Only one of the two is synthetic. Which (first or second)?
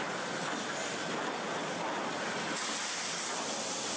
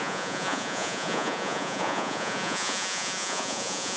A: second